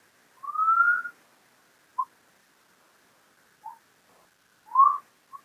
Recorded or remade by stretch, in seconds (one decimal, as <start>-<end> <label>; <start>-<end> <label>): 0.0-5.4 recorded